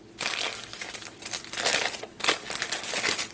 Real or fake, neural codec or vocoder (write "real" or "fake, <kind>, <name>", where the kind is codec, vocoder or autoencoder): real